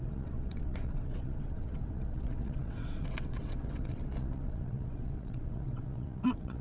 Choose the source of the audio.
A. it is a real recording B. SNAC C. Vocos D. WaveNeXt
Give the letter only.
D